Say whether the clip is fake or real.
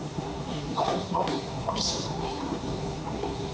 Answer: fake